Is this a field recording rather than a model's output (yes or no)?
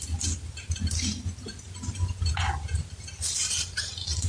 yes